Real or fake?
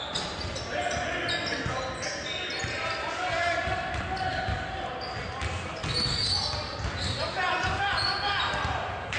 real